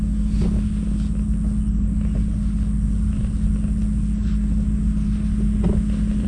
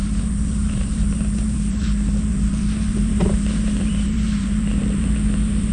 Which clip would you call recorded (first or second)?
first